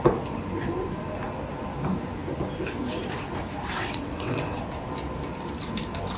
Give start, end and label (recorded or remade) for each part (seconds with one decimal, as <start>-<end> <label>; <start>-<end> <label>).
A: 0.0-3.8 recorded; 3.8-4.6 remade; 4.6-6.2 recorded